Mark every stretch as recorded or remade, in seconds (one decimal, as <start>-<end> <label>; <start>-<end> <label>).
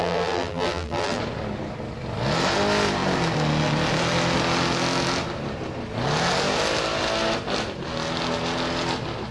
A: 0.0-1.2 remade; 1.2-9.3 recorded